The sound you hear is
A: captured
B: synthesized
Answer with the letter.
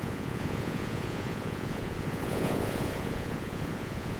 B